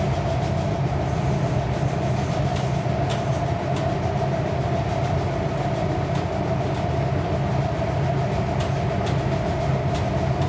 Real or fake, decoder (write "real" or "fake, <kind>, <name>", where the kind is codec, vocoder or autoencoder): real